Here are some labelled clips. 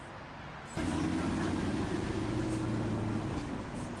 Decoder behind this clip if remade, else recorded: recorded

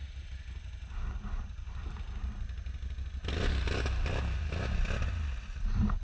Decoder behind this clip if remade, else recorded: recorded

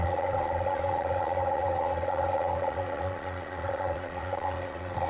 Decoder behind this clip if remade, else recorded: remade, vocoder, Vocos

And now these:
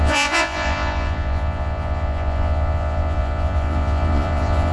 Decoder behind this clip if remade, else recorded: remade, vocoder, Vocos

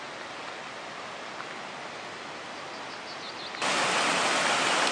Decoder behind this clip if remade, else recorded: recorded